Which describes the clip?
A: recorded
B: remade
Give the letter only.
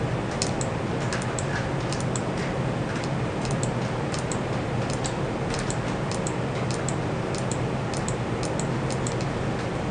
A